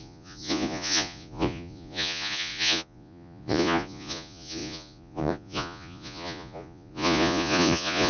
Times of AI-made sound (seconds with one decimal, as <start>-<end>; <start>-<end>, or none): 0.0-8.1